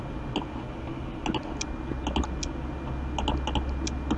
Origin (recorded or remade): recorded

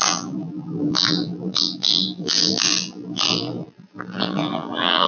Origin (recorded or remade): remade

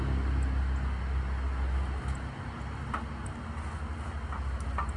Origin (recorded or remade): recorded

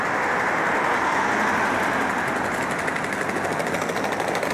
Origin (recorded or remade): recorded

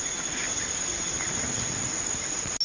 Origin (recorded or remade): recorded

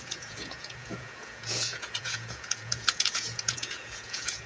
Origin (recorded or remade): remade